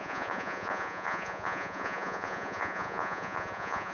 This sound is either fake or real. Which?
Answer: fake